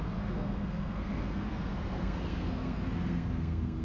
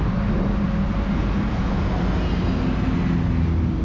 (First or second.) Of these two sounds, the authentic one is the second